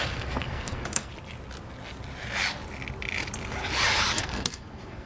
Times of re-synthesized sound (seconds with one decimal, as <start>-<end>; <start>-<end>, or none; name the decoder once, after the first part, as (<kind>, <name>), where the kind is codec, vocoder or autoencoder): 0.0-1.1 (codec, SNAC); 4.2-5.1